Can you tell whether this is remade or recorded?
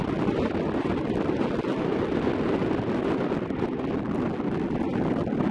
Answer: recorded